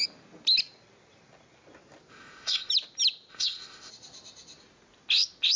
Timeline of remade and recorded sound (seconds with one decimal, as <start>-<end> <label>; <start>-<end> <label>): 0.0-2.1 recorded; 2.1-2.7 remade; 2.7-3.3 recorded; 3.3-3.9 remade; 3.9-5.6 recorded